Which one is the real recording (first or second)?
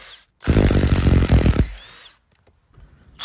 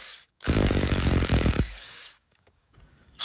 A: first